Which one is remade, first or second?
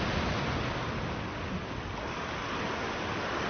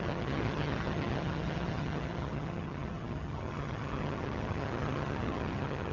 second